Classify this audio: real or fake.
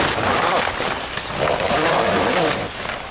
real